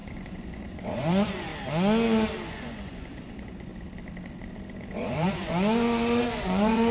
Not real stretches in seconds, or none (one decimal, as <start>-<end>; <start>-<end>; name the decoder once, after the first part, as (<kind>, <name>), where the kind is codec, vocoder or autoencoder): 0.0-1.5 (vocoder, Vocos); 2.5-3.7; 4.9-6.9